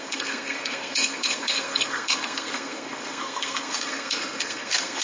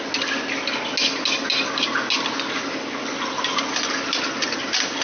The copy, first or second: first